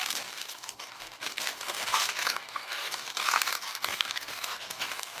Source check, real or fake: fake